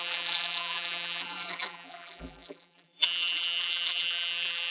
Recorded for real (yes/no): no